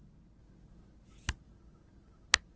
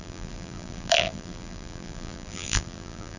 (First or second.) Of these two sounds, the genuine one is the first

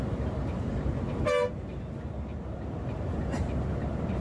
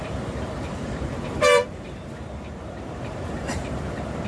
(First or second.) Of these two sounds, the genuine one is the first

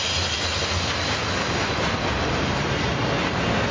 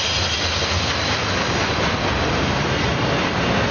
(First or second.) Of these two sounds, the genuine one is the first